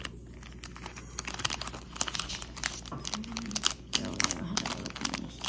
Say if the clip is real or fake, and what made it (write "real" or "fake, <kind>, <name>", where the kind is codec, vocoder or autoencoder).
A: real